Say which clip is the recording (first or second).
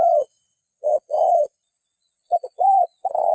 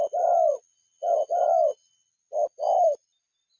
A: second